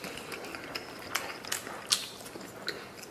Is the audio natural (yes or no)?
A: yes